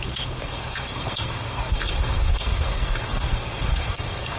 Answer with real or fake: fake